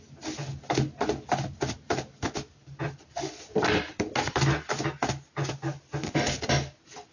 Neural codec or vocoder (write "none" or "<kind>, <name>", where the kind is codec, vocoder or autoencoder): none